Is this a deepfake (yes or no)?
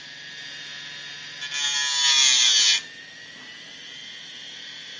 no